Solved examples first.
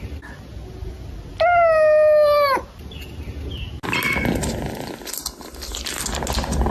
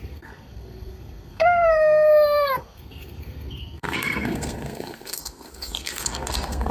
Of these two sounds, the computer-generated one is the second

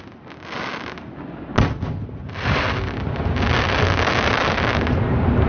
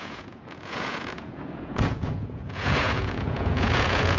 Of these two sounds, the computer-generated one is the second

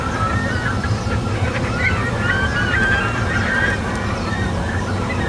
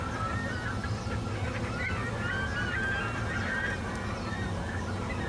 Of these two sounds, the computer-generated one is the first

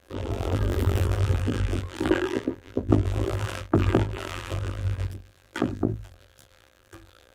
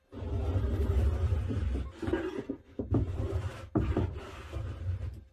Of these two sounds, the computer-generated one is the first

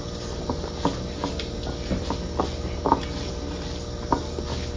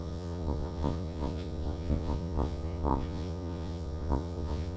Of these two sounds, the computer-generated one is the second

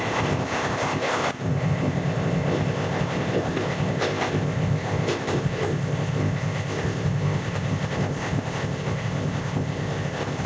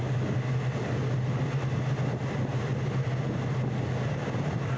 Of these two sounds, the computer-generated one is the first